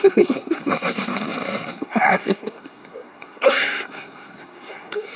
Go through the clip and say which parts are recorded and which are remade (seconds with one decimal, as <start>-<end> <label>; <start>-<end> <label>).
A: 0.0-5.2 remade